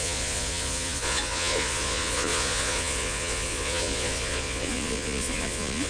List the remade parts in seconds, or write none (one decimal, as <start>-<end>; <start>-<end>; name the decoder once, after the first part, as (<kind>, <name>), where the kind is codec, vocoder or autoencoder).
0.0-5.9 (vocoder, Vocos)